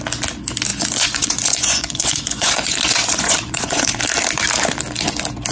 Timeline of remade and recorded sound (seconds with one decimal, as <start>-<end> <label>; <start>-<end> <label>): 0.0-0.7 recorded; 0.7-4.0 remade; 4.0-5.5 recorded